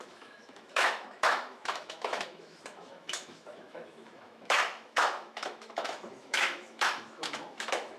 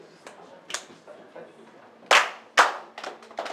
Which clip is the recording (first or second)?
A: second